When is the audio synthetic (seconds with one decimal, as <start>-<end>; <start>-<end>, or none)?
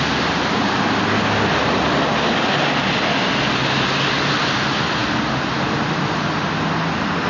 none